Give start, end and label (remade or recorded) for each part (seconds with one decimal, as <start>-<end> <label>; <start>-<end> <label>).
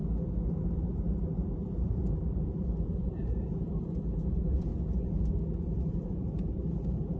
0.0-1.3 recorded; 1.3-4.7 remade; 4.7-5.9 recorded; 5.9-7.2 remade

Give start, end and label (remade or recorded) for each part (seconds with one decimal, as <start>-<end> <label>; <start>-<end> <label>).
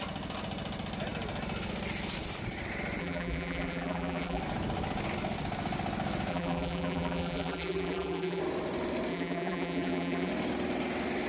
0.0-3.0 recorded; 3.0-4.4 remade; 4.4-6.3 recorded; 6.3-8.4 remade; 8.4-9.1 recorded; 9.1-10.3 remade; 10.3-11.3 recorded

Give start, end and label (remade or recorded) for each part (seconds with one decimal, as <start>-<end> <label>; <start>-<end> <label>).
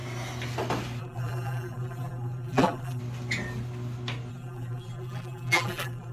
0.0-1.0 recorded; 1.0-3.0 remade; 3.0-4.3 recorded; 4.3-6.1 remade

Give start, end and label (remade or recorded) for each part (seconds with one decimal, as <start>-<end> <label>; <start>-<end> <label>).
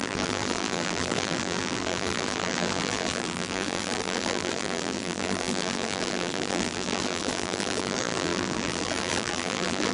0.0-9.9 remade